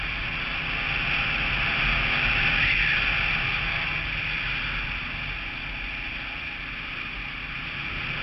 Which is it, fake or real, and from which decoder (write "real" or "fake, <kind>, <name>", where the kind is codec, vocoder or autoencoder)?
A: real